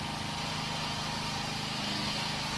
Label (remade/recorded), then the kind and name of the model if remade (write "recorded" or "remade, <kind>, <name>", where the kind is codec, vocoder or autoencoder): recorded